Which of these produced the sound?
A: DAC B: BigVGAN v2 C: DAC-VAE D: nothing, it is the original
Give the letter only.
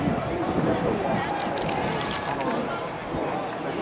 D